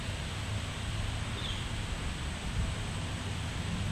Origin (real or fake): real